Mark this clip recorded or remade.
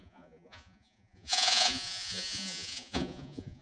remade